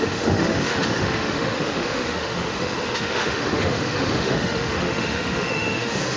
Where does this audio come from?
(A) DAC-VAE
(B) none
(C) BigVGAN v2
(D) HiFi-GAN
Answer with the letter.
A